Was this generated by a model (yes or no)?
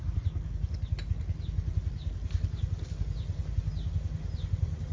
no